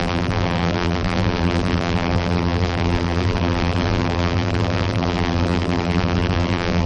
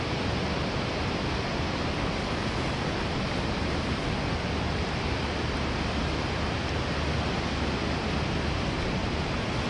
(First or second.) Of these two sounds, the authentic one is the second